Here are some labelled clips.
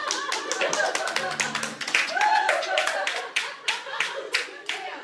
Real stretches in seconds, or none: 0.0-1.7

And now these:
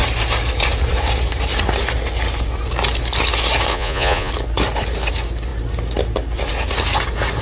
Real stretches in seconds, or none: 0.0-3.7; 4.3-7.4

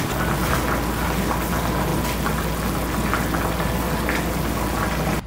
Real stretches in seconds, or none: 0.0-5.3

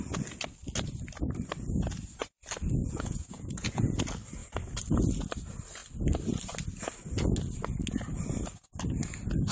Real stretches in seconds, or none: 0.0-2.8; 4.0-9.5

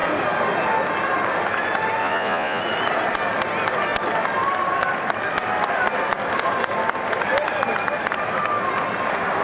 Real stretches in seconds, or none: 0.0-2.0; 2.6-9.4

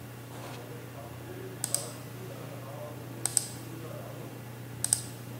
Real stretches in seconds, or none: 0.0-5.4

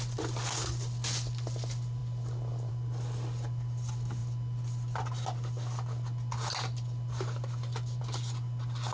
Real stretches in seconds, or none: 0.0-8.9

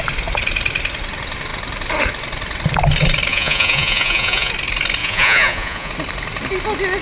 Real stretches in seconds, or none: 0.0-3.3; 4.5-5.0; 5.9-7.0